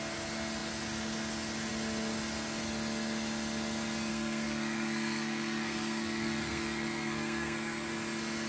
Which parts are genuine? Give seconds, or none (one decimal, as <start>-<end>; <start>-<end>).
0.0-4.1; 7.9-8.5